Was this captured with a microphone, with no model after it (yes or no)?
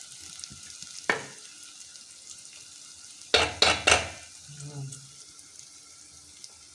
yes